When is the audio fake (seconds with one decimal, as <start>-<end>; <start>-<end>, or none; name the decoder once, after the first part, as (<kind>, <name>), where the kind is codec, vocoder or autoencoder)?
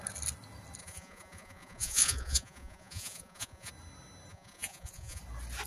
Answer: 0.8-3.7 (vocoder, Vocos); 4.3-5.2